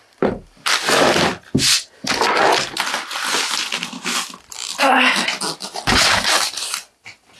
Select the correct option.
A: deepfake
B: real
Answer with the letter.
B